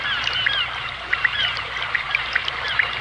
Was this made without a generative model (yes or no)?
no